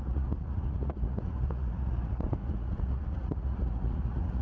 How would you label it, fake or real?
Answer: fake